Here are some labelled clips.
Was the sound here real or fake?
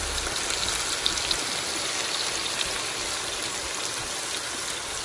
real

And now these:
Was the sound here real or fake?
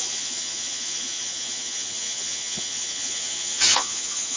fake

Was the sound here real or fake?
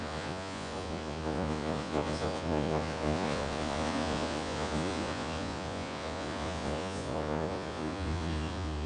fake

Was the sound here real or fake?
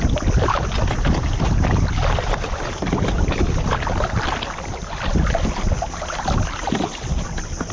real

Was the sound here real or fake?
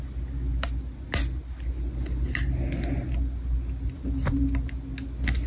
real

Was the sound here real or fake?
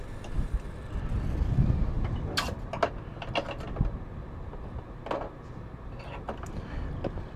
real